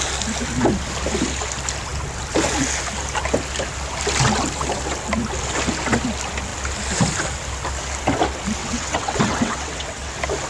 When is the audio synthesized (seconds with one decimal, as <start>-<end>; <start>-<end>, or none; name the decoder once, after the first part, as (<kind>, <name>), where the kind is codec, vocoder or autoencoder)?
8.6-10.1 (vocoder, WaveNeXt)